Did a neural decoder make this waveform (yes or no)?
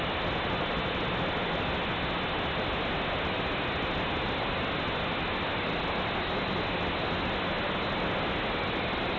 no